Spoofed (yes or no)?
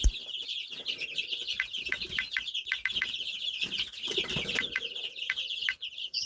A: no